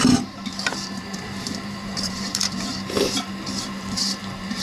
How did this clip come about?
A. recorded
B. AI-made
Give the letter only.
B